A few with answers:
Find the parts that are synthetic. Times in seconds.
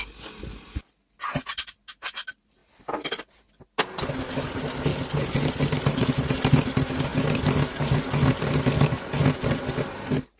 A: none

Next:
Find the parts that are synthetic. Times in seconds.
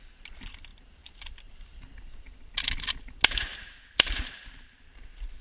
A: none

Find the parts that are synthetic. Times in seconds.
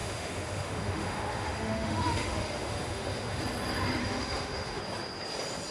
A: 0.0-3.4 (autoencoder, DAC-VAE); 4.0-4.8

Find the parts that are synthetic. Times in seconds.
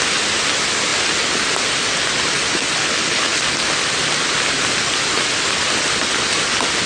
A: 2.8-3.4 (codec, HILCodec)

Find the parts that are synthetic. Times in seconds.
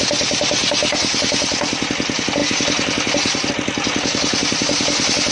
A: none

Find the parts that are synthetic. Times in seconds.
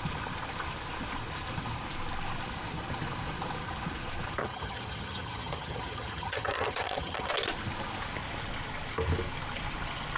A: 4.4-7.3 (vocoder, HiFi-GAN)